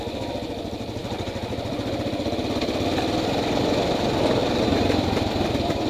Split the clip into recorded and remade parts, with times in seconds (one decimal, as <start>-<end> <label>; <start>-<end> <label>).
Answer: 0.0-4.4 recorded; 4.4-5.9 remade